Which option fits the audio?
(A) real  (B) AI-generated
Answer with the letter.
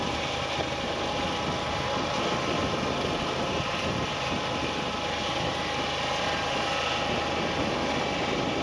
A